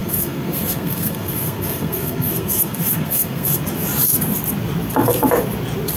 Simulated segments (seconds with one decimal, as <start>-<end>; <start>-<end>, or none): 0.0-3.6

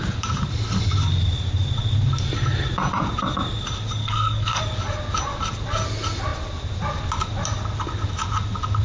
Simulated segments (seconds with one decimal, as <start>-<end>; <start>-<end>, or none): 4.0-4.6

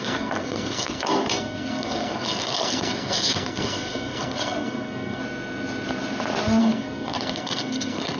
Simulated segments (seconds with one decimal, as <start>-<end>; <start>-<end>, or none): 0.0-5.2; 6.6-8.2

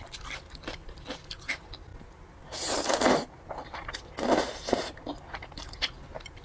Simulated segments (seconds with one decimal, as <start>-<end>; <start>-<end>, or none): none